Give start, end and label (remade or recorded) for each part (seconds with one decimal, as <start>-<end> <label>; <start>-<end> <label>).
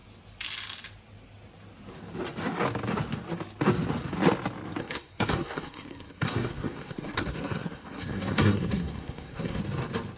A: 0.0-4.8 recorded; 4.8-9.6 remade; 9.6-10.2 recorded